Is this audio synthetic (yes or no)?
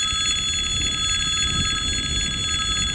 no